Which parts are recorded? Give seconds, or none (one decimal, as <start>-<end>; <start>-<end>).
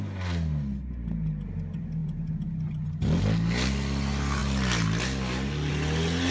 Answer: 0.0-6.3